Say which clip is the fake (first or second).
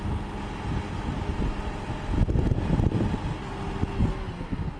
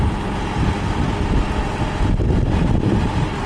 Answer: second